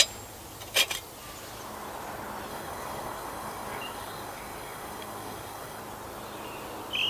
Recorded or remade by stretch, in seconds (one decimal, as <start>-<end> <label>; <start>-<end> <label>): 0.0-2.5 recorded; 2.5-5.8 remade; 5.8-7.1 recorded